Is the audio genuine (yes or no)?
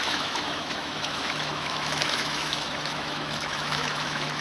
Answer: no